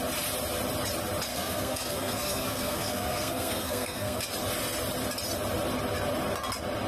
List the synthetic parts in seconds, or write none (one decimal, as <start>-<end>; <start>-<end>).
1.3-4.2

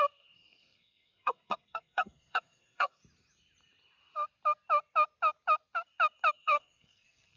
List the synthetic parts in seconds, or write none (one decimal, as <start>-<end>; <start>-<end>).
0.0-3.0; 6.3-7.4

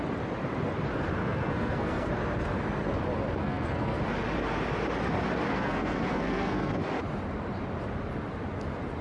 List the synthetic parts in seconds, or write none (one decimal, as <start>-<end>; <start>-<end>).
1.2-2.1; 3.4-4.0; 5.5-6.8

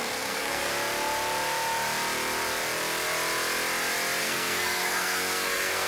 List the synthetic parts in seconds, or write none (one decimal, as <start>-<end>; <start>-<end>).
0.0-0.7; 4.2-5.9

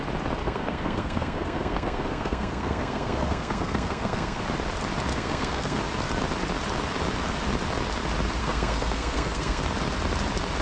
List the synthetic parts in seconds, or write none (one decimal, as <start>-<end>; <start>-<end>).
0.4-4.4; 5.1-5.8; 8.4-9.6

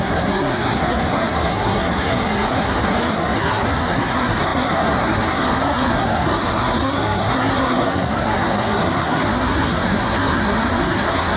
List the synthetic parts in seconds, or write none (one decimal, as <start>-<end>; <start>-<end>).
0.0-11.4

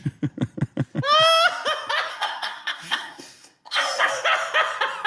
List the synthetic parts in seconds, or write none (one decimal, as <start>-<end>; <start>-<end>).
2.1-4.1

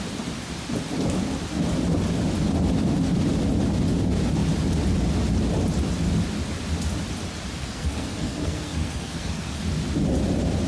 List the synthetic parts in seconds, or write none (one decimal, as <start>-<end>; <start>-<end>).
7.6-9.6